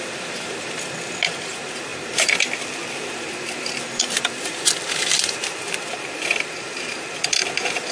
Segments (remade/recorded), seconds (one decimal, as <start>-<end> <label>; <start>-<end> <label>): 0.0-7.9 remade